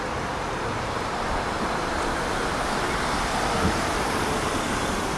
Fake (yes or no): yes